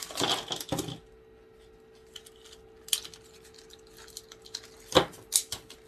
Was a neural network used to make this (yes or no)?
no